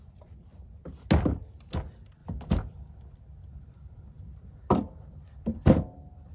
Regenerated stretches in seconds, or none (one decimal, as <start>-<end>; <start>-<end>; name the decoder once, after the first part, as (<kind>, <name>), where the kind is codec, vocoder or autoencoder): none